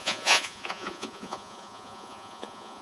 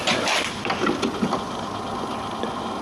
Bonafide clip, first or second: second